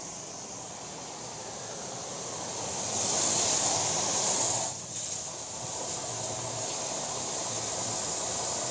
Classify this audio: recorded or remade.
recorded